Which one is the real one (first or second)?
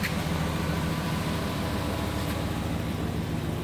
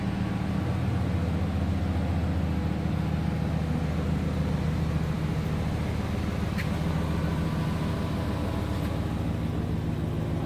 second